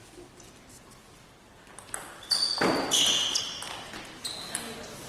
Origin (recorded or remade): recorded